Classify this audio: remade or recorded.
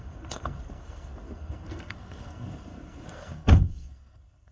remade